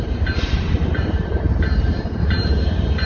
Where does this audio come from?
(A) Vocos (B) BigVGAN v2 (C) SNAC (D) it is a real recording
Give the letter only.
B